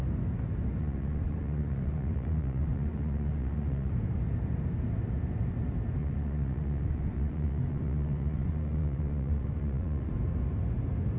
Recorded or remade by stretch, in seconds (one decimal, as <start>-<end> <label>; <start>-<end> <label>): 0.0-0.8 recorded; 0.8-3.9 remade; 3.9-6.0 recorded; 6.0-10.1 remade; 10.1-11.2 recorded